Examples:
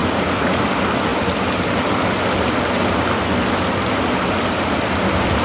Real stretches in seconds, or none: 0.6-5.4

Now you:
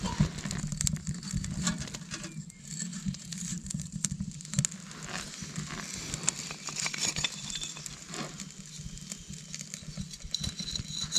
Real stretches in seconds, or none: 0.0-0.7; 1.2-2.9; 4.6-11.2